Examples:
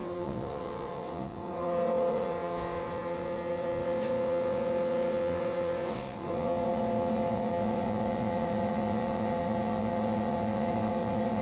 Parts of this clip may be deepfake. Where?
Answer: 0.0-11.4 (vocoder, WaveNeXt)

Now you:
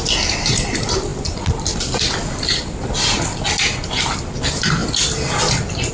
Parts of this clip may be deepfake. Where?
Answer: none

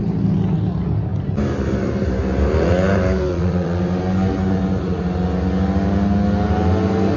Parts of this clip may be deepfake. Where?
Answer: 3.3-3.8 (vocoder, WaveNeXt)

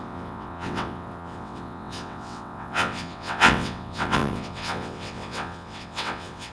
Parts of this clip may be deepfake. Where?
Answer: 0.0-6.5 (vocoder, WaveNeXt)

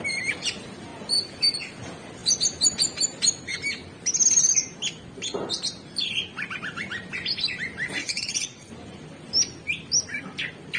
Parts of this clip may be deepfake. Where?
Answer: 8.0-8.7 (vocoder, WaveNeXt)

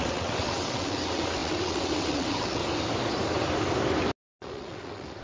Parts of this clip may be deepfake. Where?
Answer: 0.0-2.6 (vocoder, WaveNeXt); 4.4-5.2

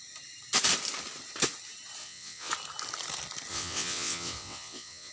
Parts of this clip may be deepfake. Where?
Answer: 2.0-2.5 (vocoder, WaveNeXt); 3.5-5.1